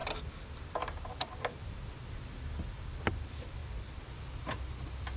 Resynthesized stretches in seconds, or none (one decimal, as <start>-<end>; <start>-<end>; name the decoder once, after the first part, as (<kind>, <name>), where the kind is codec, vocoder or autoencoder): none